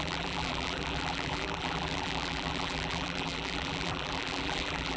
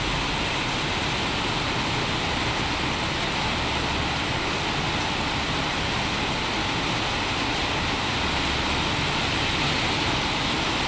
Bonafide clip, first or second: second